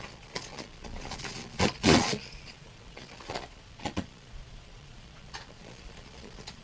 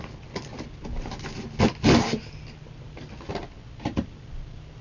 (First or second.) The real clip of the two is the second